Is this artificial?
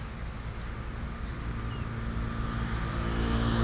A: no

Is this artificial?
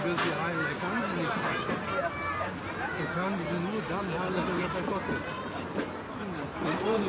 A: no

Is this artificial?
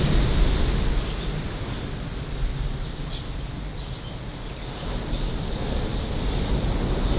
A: no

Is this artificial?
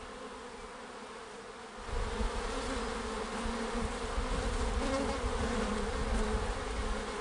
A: no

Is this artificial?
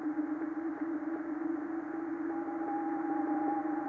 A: no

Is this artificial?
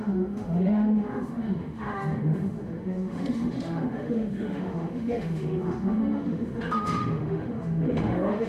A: yes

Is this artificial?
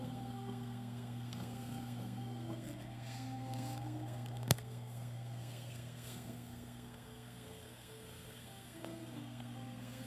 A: yes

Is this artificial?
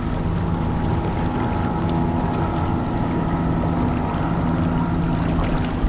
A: no